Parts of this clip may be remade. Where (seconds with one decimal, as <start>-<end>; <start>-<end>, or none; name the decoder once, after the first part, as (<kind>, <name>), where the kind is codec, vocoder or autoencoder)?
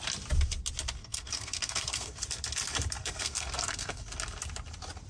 1.0-2.2 (codec, SNAC); 3.0-4.0